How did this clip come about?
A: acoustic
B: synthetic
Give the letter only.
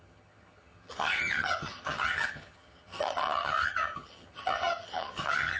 B